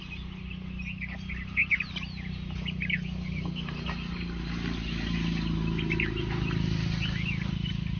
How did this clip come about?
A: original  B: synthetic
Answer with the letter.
A